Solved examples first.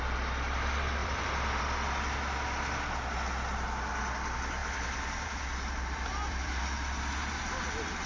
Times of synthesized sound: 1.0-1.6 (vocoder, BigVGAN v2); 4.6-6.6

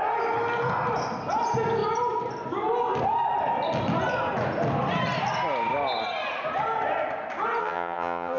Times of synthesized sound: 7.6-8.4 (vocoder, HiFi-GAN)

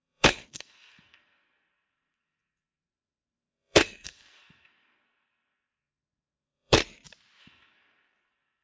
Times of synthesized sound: 0.0-6.8 (codec, SNAC); 7.4-8.6